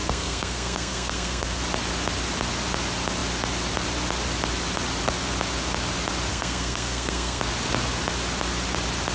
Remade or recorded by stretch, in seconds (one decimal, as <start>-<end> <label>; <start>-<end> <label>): 0.0-1.6 remade; 1.6-6.3 recorded; 6.3-7.4 remade; 7.4-9.1 recorded